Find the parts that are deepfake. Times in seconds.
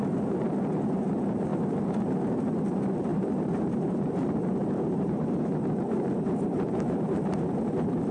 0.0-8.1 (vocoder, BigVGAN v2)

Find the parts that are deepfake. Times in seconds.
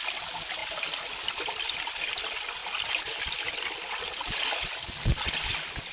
none